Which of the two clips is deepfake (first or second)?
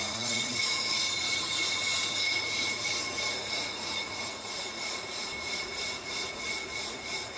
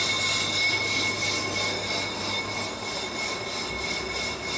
first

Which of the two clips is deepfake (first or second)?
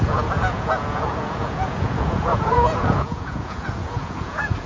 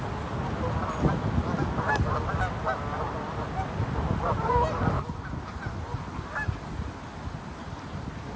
first